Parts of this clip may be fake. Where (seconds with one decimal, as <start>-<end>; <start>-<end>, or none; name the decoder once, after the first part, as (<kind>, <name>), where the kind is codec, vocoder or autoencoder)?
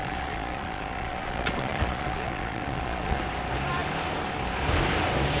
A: 0.0-3.2 (vocoder, Vocos)